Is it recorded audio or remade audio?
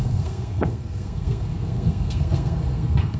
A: remade